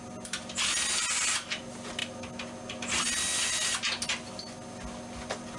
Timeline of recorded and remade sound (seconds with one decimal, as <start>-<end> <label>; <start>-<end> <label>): 0.0-5.6 recorded